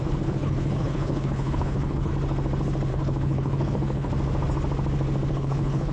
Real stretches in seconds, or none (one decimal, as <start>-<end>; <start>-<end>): 2.1-2.9; 4.1-5.3